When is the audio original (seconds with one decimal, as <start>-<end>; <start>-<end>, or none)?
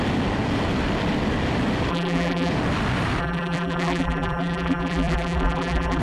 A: 0.0-1.9; 2.5-3.2